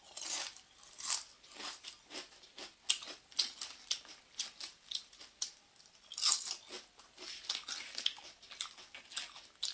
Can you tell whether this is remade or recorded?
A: recorded